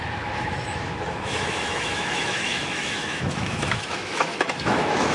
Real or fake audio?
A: fake